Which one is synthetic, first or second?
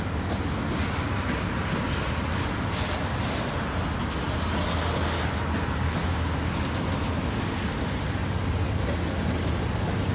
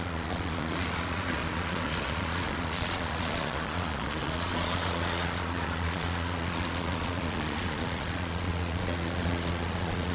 second